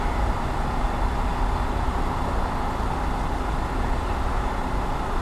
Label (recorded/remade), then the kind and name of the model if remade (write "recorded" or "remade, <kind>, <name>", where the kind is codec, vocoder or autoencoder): recorded